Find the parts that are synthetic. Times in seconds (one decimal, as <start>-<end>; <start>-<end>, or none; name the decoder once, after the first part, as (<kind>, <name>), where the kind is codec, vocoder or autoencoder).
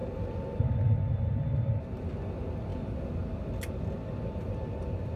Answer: none